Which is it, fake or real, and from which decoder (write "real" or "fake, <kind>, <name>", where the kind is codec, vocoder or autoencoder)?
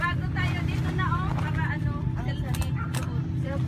real